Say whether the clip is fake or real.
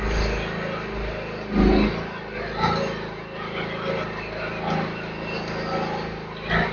real